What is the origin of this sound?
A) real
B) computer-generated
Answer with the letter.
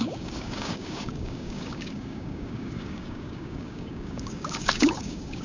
B